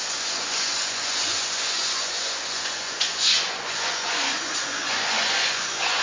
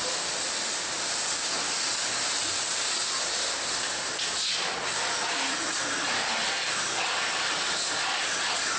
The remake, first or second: first